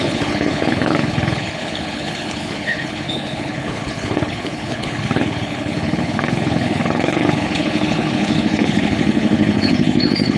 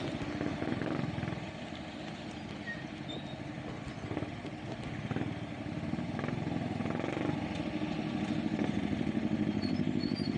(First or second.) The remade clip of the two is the first